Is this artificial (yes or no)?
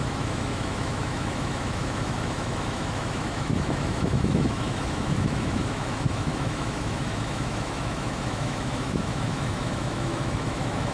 yes